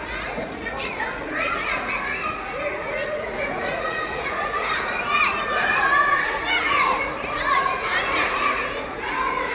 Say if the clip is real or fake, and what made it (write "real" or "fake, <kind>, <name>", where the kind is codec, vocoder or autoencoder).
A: fake, vocoder, Vocos